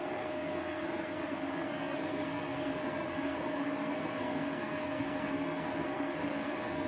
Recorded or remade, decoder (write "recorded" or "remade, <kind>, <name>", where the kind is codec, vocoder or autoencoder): remade, codec, SNAC